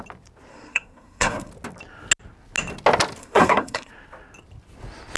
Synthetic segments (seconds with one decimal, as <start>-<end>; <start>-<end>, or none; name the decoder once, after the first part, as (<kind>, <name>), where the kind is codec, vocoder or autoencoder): 0.5-1.5 (codec, SNAC); 3.2-3.9